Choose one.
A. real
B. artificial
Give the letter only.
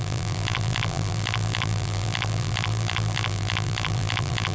B